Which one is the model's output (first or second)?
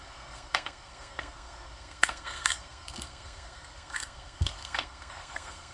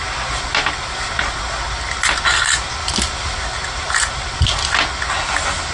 first